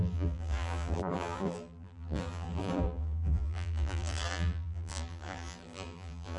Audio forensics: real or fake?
fake